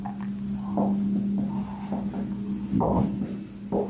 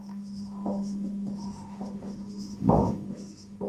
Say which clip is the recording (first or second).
first